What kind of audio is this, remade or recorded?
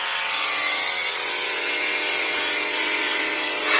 remade